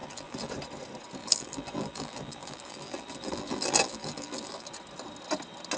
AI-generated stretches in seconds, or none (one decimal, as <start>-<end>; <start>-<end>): 0.0-0.5; 1.2-4.7